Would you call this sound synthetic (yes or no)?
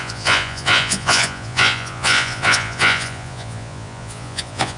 yes